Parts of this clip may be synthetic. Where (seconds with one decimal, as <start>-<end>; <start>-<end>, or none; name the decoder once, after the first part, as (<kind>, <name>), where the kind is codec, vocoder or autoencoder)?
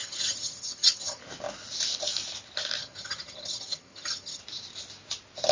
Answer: 0.0-1.2 (vocoder, HiFi-GAN); 2.8-4.4